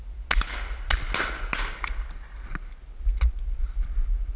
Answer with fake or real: real